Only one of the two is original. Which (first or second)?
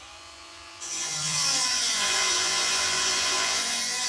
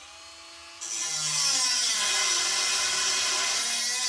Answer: second